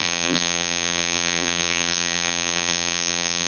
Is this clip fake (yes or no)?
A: yes